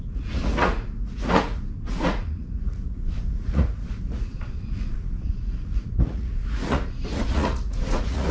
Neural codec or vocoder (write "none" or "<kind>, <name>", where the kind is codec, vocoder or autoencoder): vocoder, Vocos